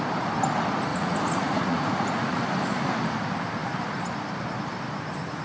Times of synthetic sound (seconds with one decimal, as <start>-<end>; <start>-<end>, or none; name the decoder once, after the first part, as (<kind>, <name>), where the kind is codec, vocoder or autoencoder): 0.9-2.4 (vocoder, Vocos)